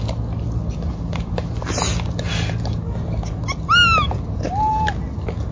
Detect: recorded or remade recorded